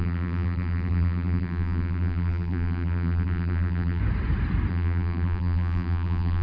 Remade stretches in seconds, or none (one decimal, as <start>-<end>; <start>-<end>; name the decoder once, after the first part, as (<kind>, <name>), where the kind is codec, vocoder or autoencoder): 0.0-4.0 (vocoder, BigVGAN v2); 4.7-6.4